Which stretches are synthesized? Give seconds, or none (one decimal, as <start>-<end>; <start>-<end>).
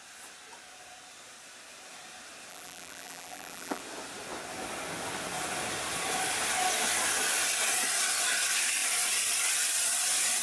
2.5-3.8